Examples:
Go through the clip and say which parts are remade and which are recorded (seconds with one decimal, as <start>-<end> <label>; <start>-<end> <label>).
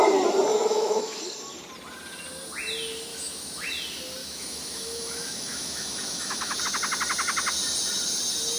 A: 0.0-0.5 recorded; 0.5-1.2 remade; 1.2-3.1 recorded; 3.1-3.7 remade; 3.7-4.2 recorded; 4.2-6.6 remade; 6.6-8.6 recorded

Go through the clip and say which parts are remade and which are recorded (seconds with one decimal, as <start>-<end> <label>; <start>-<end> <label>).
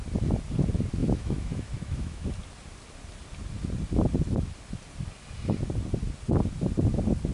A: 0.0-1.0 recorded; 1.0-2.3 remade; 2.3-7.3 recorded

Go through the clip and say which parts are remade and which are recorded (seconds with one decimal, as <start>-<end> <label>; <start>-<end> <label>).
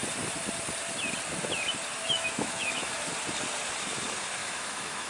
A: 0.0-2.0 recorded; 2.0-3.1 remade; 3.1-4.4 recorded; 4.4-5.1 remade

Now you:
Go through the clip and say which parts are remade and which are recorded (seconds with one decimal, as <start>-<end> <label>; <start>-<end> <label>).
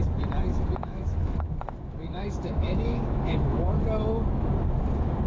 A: 0.0-0.5 recorded; 0.5-3.7 remade; 3.7-5.3 recorded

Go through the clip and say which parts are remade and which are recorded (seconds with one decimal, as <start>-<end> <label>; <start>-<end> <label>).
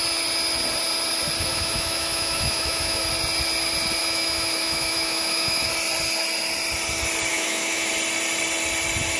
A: 0.0-1.5 recorded; 1.5-3.1 remade; 3.1-4.0 recorded; 4.0-5.7 remade; 5.7-7.3 recorded; 7.3-7.9 remade; 7.9-9.2 recorded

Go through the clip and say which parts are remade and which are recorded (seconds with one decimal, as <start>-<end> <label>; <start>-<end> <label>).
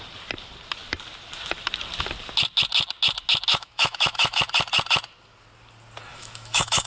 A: 0.0-3.5 recorded; 3.5-4.4 remade; 4.4-6.1 recorded; 6.1-6.9 remade